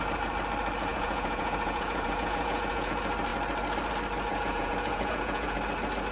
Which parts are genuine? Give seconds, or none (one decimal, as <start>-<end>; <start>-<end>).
0.0-0.9; 2.9-4.3; 5.6-6.1